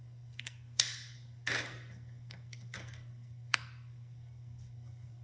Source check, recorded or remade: remade